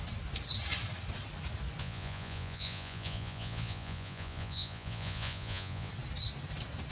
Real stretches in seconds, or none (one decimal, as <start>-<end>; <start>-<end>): 0.0-1.8; 5.9-6.9